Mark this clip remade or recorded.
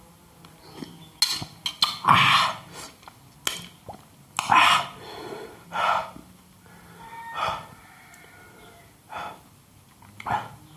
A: recorded